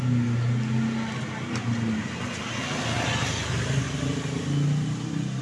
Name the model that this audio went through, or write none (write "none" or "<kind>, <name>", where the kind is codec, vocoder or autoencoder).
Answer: none